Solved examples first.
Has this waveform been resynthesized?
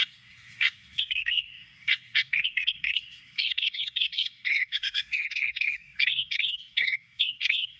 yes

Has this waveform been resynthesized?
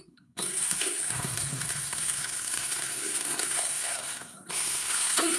yes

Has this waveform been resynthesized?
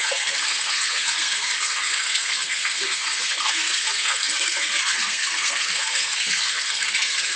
yes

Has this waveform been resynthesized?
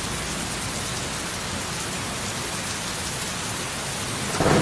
no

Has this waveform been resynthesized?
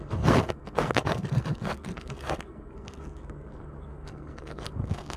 yes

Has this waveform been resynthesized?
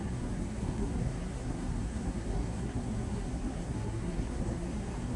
yes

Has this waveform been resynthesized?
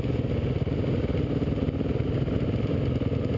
no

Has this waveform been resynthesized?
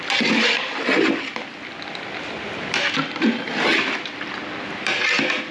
no